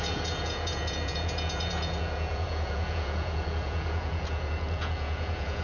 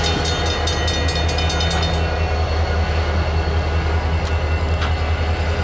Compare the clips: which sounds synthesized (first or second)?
first